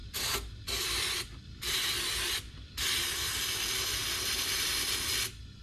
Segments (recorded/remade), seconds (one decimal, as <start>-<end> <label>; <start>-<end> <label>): 0.0-1.8 remade; 1.8-5.6 recorded